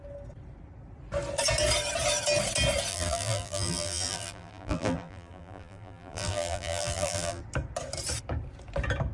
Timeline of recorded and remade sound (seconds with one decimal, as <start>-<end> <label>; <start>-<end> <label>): 0.0-2.9 recorded; 2.9-7.4 remade; 7.4-9.1 recorded